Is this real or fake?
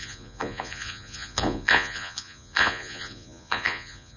fake